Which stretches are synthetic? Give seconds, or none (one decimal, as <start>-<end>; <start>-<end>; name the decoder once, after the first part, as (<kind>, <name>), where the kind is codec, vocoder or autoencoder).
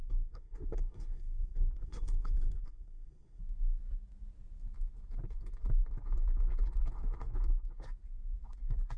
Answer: 0.0-3.4 (codec, SNAC)